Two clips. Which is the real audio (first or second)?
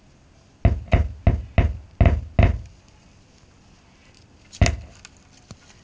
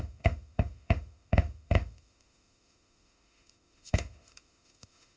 first